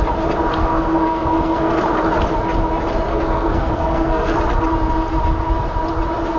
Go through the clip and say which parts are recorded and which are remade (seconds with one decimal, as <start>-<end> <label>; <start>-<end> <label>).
0.0-0.6 recorded; 0.6-1.8 remade; 1.8-3.1 recorded; 3.1-4.4 remade; 4.4-6.4 recorded